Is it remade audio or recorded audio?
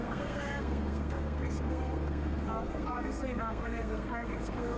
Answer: remade